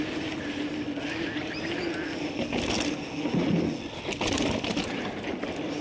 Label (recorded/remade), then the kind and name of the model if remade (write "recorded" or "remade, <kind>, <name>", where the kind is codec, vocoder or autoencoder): recorded